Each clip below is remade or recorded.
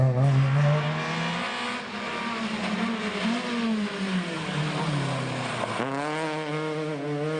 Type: recorded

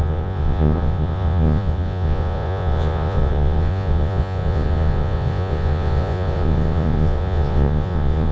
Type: remade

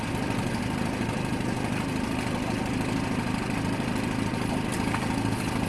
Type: recorded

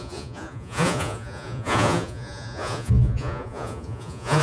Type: remade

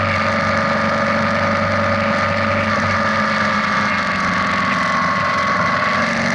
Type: recorded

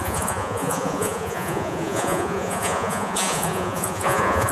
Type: remade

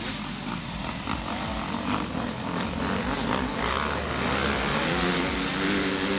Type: recorded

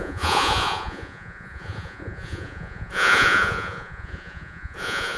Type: remade